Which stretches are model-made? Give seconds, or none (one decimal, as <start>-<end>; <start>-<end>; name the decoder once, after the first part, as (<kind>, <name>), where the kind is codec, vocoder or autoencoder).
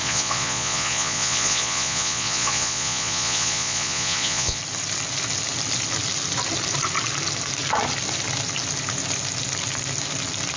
0.0-4.6 (vocoder, Vocos)